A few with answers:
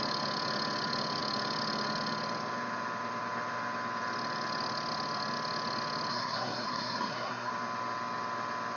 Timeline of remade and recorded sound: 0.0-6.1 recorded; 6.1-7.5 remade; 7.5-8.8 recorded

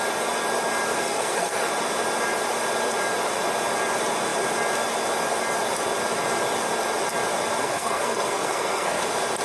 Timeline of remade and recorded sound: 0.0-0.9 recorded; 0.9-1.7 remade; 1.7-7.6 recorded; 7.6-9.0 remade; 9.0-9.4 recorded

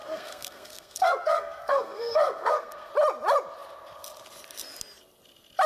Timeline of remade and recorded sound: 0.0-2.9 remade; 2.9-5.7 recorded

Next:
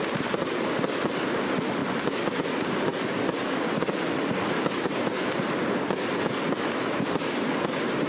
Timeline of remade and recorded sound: 0.0-8.1 recorded

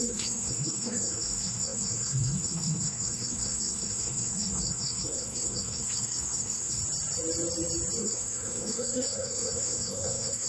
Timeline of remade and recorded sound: 0.0-6.8 remade; 6.8-8.0 recorded; 8.0-10.5 remade

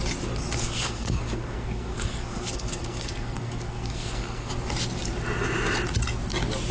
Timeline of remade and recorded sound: 0.0-0.6 recorded; 0.6-4.5 remade; 4.5-6.7 recorded

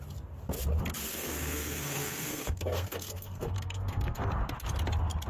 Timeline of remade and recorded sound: 0.0-1.1 recorded; 1.1-4.3 remade; 4.3-5.3 recorded

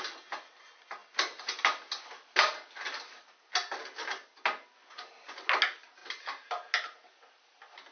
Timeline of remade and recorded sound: 0.0-7.9 recorded